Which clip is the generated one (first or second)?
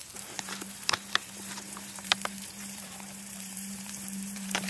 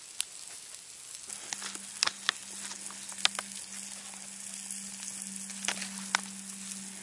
first